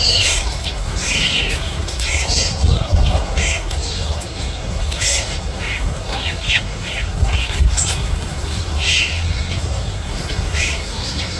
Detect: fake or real fake